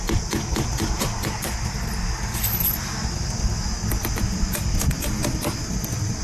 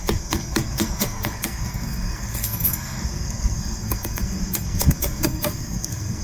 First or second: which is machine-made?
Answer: second